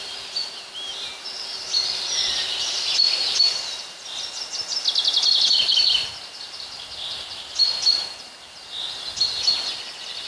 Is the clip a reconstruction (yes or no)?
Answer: no